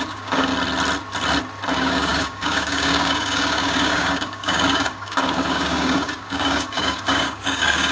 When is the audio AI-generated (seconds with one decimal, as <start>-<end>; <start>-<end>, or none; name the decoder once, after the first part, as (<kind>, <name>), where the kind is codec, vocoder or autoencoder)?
0.0-0.5 (codec, DAC); 1.7-7.9

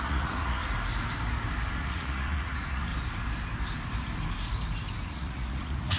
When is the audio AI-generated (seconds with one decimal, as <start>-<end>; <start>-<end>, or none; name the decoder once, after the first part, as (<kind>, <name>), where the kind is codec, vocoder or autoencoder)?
0.0-0.6 (vocoder, Vocos); 1.8-2.9; 5.1-6.0

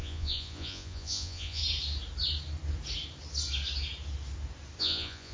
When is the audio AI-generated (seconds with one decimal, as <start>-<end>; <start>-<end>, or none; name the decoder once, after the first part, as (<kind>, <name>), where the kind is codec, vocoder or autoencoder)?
0.0-1.6 (vocoder, Vocos); 4.8-5.3

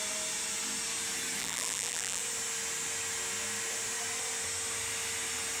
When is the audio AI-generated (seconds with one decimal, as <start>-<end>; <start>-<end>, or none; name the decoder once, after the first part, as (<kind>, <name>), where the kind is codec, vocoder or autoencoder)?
1.4-2.2 (vocoder, BigVGAN v2)

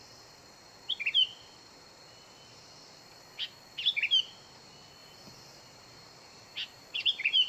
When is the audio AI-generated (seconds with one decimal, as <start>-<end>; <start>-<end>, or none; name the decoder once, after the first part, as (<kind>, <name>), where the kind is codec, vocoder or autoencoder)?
5.0-7.5 (vocoder, BigVGAN v2)

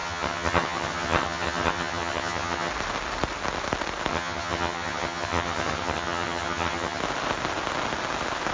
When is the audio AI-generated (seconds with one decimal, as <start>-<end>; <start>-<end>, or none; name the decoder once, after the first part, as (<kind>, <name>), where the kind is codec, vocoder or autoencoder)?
0.0-2.7 (vocoder, HiFi-GAN); 4.1-7.0

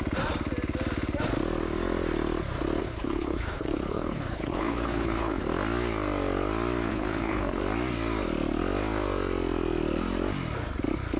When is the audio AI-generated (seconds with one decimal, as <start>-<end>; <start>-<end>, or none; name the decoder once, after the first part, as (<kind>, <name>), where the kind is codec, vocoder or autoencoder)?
2.8-5.4 (codec, HILCodec); 6.9-7.6